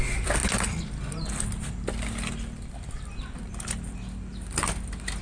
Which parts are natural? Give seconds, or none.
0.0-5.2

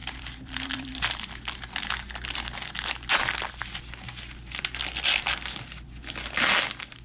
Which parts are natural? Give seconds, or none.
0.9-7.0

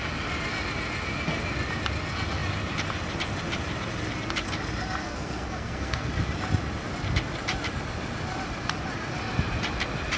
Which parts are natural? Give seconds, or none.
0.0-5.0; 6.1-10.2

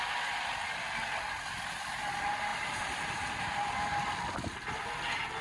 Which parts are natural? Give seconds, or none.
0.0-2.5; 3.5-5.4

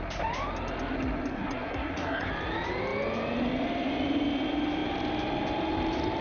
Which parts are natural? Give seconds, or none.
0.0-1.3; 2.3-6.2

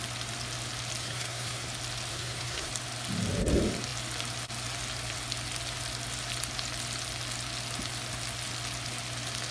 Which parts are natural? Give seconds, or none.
0.0-1.0; 1.7-2.1; 2.7-9.5

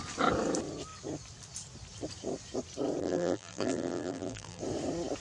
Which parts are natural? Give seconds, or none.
0.0-3.0; 4.6-5.2